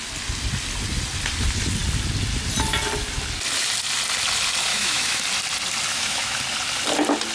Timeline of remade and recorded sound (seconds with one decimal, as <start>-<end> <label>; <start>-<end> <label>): 0.0-4.7 recorded; 4.7-5.2 remade; 5.2-5.9 recorded; 5.9-6.4 remade; 6.4-7.3 recorded